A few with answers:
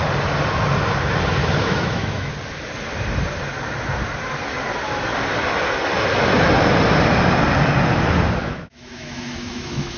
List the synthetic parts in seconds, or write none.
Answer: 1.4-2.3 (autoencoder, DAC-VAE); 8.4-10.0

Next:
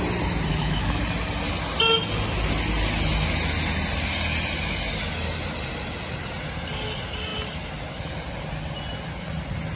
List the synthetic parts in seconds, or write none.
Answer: 0.5-1.0 (autoencoder, DAC-VAE)